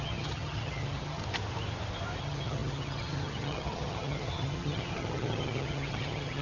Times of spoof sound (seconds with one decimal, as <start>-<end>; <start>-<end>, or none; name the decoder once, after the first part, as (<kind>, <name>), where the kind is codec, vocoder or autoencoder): 0.0-1.2 (vocoder, HiFi-GAN); 2.2-6.4